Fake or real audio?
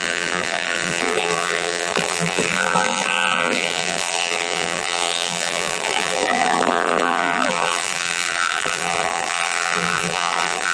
fake